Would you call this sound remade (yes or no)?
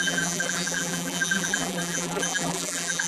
yes